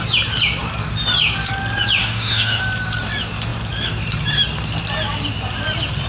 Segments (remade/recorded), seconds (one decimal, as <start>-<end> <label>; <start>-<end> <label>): 0.0-2.0 recorded; 2.0-2.6 remade; 2.6-6.1 recorded